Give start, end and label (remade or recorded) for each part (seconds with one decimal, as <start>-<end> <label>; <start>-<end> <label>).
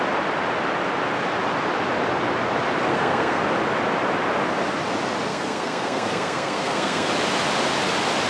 0.0-2.9 recorded; 2.9-3.4 remade; 3.4-5.3 recorded; 5.3-7.1 remade; 7.1-8.3 recorded